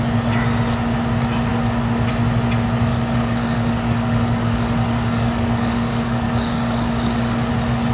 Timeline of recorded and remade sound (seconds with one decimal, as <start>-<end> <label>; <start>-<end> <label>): 0.0-2.9 recorded; 2.9-7.5 remade; 7.5-7.9 recorded